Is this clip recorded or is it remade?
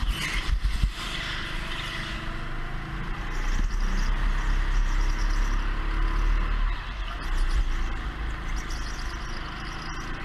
recorded